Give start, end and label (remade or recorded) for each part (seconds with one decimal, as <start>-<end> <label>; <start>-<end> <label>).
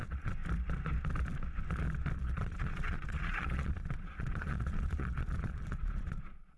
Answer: 0.0-0.4 remade; 0.4-2.2 recorded; 2.2-6.6 remade